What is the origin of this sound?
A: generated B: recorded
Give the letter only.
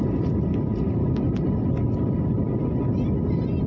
B